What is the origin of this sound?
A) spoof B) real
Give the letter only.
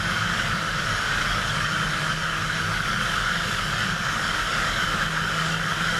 A